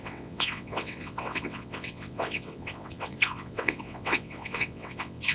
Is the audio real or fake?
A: fake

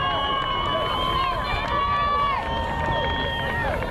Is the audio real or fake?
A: real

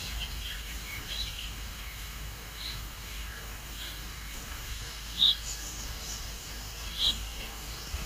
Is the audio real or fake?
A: fake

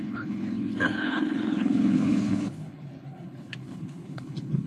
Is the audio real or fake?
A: fake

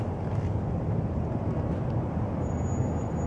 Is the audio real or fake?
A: real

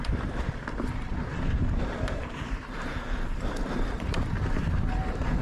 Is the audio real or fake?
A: fake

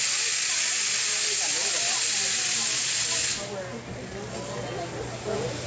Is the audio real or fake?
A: real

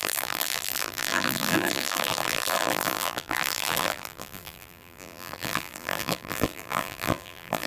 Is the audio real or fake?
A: fake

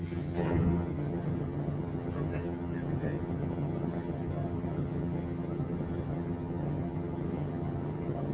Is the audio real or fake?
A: fake